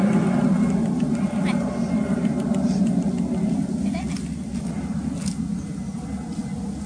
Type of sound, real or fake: real